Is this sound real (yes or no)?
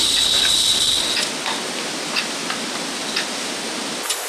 yes